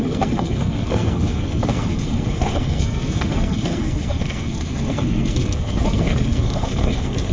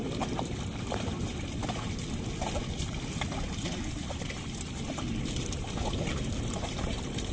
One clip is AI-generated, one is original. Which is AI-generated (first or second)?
first